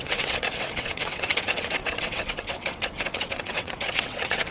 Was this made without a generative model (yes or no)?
no